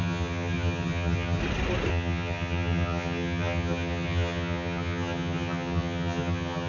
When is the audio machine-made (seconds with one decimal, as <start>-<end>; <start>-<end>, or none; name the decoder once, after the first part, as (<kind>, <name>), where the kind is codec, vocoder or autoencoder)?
0.0-1.4 (vocoder, HiFi-GAN); 1.9-6.7